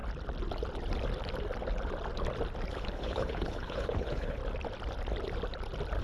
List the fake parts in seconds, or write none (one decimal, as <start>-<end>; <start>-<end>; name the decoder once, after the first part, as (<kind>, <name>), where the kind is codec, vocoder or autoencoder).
2.7-4.4 (codec, HILCodec)